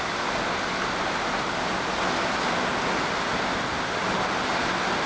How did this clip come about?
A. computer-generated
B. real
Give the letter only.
B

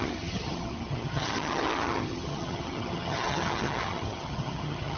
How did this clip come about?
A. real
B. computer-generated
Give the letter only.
B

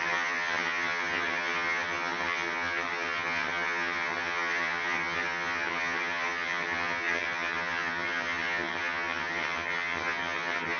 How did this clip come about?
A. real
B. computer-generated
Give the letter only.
B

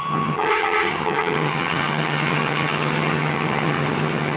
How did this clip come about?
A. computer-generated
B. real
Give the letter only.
A